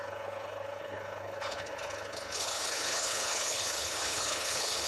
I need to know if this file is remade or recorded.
remade